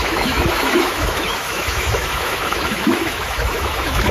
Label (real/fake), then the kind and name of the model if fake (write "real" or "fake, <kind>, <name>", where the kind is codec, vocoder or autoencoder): fake, autoencoder, DAC-VAE